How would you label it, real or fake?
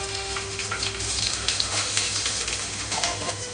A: fake